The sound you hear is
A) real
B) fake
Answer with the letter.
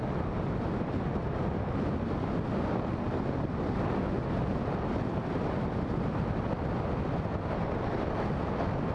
A